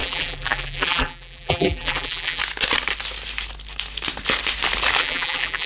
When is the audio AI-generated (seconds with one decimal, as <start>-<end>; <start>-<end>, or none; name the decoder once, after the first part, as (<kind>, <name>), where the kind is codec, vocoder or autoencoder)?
0.0-2.4 (vocoder, BigVGAN v2); 5.0-5.7